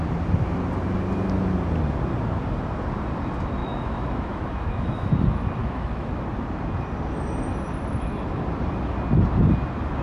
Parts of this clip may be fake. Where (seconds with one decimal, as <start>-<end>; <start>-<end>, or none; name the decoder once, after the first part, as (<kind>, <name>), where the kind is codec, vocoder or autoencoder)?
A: 3.6-5.1 (autoencoder, DAC-VAE); 5.6-6.1